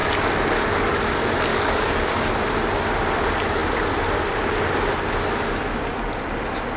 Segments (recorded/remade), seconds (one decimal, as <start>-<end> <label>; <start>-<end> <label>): 0.0-1.0 remade; 1.0-1.5 recorded; 1.5-2.3 remade; 2.3-6.8 recorded